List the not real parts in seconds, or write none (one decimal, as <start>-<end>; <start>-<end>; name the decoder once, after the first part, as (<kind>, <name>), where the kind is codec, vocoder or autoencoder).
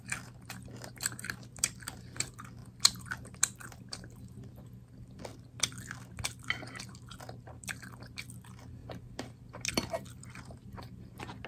0.0-5.3 (vocoder, BigVGAN v2); 7.2-8.8; 9.7-11.5